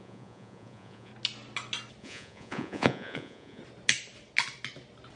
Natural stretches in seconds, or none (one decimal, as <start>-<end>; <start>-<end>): 1.1-2.0; 3.6-5.2